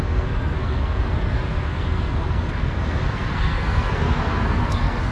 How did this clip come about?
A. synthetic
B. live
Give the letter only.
A